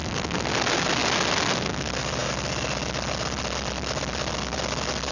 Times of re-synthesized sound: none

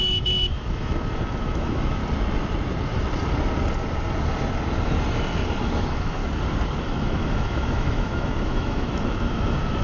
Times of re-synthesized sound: 0.0-2.0 (autoencoder, DAC-VAE); 5.6-6.2; 6.8-9.8

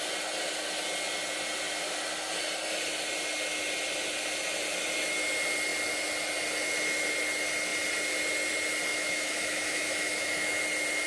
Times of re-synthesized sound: 8.9-10.6 (autoencoder, DAC-VAE)